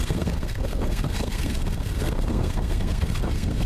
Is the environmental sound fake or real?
fake